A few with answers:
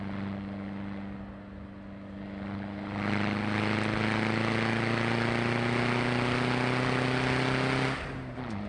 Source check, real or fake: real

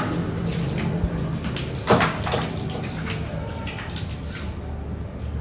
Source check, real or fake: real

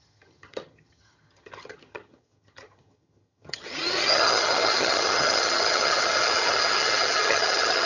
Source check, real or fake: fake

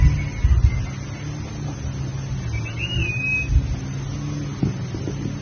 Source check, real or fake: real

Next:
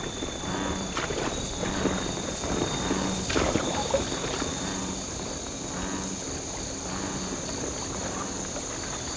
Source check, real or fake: real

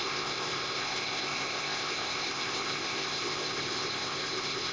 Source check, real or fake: fake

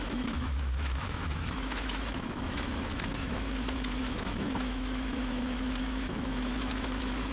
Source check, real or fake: fake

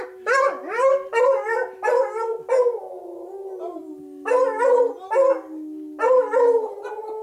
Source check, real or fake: real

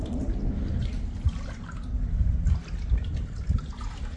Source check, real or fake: real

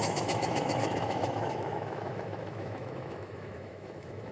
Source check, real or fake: fake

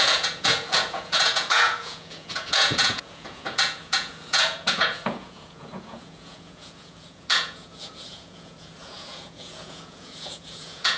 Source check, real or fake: fake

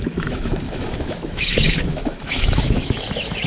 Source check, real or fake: fake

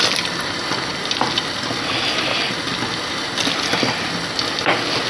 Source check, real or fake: real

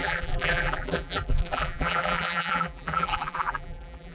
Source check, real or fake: fake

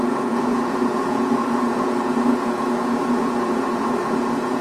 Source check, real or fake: fake